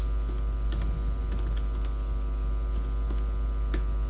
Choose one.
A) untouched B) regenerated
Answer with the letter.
A